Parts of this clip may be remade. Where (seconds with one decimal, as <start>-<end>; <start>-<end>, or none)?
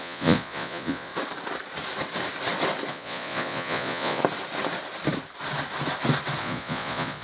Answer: 0.0-1.1; 2.9-4.2; 6.4-7.2